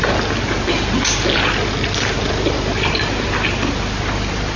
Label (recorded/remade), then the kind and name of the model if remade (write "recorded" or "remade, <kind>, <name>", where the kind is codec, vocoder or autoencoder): recorded